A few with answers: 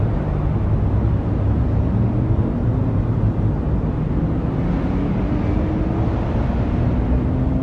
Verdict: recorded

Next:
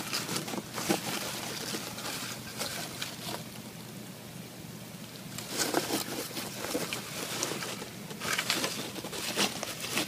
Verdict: recorded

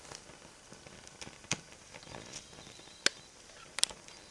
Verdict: recorded